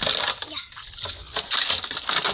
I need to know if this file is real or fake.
real